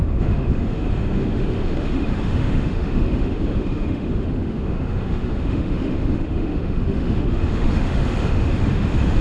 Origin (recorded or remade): remade